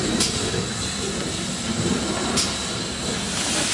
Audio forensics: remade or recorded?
recorded